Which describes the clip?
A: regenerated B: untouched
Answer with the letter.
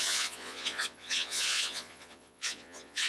A